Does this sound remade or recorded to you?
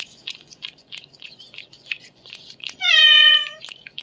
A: remade